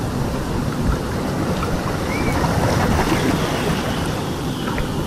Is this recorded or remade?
recorded